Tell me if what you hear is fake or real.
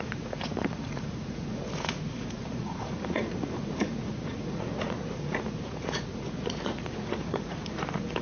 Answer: fake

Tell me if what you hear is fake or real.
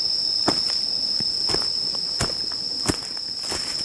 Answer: real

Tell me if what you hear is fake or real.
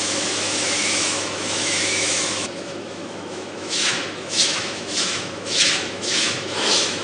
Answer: fake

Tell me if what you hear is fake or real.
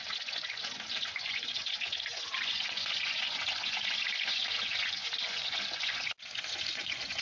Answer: fake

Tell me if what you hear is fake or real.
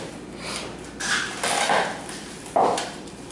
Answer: real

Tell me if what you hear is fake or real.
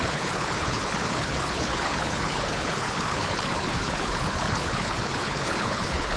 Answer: fake